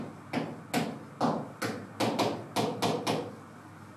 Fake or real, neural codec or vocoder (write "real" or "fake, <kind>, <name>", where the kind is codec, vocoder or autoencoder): real